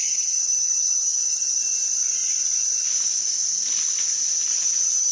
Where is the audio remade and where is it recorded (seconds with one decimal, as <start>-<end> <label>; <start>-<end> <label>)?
0.0-1.6 remade; 1.6-4.5 recorded; 4.5-5.1 remade